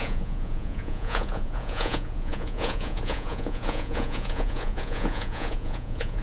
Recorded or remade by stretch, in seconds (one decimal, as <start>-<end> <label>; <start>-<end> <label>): 0.0-6.2 remade